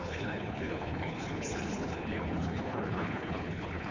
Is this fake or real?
fake